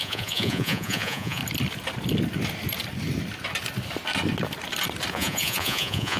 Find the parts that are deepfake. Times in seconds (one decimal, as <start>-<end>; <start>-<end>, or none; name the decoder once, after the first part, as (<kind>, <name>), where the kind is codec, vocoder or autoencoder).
0.0-1.4 (vocoder, Vocos); 5.1-6.2